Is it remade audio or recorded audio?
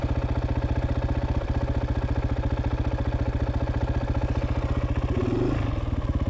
recorded